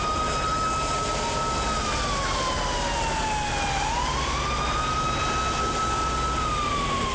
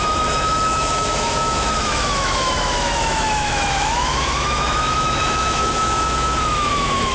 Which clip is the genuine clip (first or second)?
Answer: first